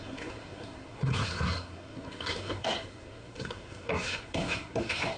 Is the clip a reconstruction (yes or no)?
yes